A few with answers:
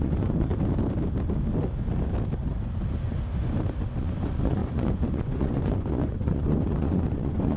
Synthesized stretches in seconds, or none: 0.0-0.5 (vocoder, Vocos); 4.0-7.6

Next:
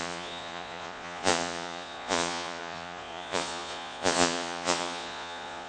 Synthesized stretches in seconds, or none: 0.0-5.7 (vocoder, Vocos)

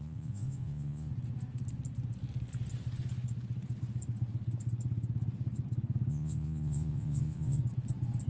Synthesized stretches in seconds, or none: 0.0-1.1 (vocoder, Vocos); 6.1-7.6

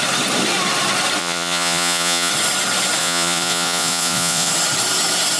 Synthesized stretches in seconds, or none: 1.2-2.3 (vocoder, Vocos); 3.0-4.5

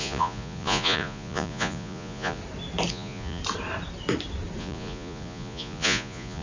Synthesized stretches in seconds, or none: 0.0-2.4 (vocoder, Vocos); 2.9-3.4; 4.6-6.4

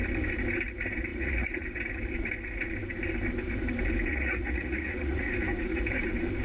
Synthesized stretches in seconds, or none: 1.1-1.8 (vocoder, Vocos); 4.1-5.3